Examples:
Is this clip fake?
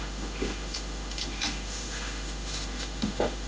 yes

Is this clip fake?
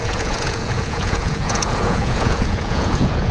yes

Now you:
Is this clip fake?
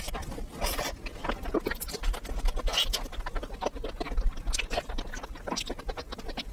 no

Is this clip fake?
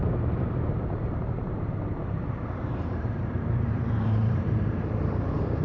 yes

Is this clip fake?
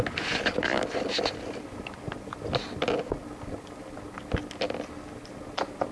no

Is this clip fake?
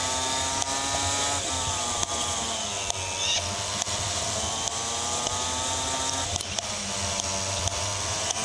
no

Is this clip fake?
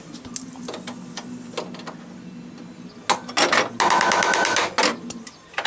no